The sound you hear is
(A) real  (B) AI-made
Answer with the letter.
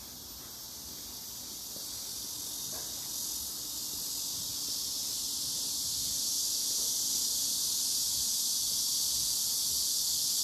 A